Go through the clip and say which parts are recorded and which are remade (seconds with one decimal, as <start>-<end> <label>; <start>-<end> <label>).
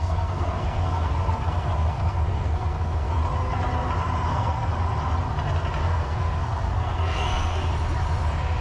0.0-3.2 remade; 3.2-4.3 recorded; 4.3-4.7 remade; 4.7-5.8 recorded; 5.8-7.6 remade; 7.6-8.6 recorded